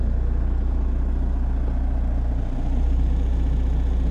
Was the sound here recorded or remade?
recorded